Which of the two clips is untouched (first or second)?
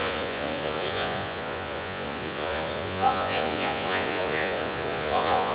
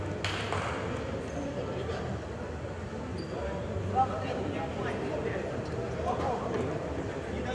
second